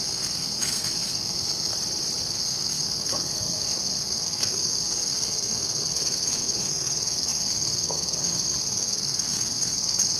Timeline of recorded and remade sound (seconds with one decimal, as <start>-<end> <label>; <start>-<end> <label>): 0.0-1.7 remade; 1.7-2.2 recorded; 2.2-10.2 remade